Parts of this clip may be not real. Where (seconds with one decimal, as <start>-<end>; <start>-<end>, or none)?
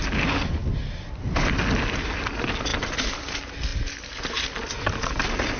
none